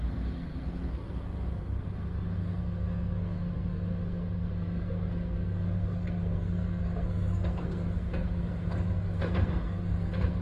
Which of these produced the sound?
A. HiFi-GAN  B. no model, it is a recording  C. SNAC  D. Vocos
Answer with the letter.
C